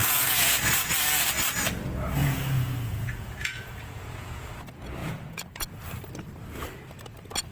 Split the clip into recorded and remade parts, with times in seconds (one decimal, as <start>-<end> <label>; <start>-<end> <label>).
0.0-0.9 remade; 0.9-2.2 recorded; 2.2-4.5 remade; 4.5-5.0 recorded; 5.0-5.6 remade; 5.6-7.5 recorded